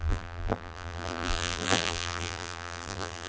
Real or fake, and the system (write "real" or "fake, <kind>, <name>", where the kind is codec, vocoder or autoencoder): fake, vocoder, BigVGAN v2